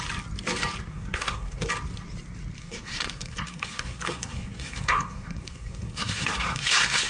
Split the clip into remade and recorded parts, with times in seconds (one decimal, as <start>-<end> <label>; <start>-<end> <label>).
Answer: 0.0-0.9 recorded; 0.9-1.7 remade; 1.7-2.6 recorded; 2.6-7.1 remade